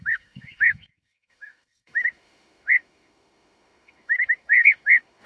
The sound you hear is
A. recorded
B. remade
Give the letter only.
B